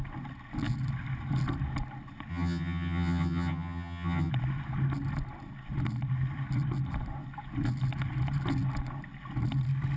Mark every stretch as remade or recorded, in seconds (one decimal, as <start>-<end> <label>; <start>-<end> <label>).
0.0-2.3 recorded; 2.3-4.3 remade; 4.3-10.0 recorded